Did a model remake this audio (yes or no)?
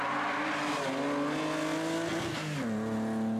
no